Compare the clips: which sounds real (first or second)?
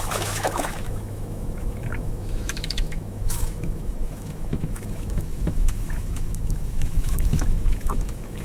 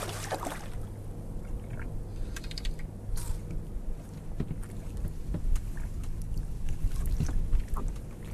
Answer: second